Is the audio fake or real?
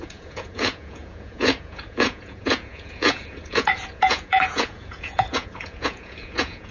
fake